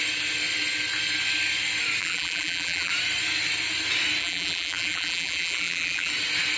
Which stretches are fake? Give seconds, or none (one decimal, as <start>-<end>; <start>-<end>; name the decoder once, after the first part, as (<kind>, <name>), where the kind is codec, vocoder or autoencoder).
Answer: 2.0-2.9 (vocoder, BigVGAN v2); 4.2-6.1

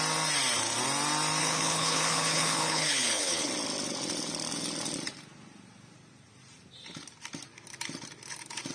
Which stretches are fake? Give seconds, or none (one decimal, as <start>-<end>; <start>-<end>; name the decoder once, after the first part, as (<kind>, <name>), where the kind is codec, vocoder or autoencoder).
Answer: 1.4-3.5 (codec, HILCodec)